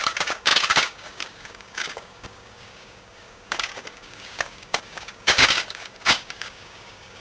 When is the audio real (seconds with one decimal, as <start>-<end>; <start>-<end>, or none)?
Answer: none

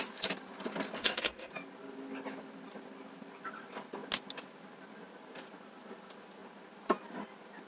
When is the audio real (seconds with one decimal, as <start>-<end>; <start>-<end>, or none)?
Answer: 0.0-1.0; 1.5-7.7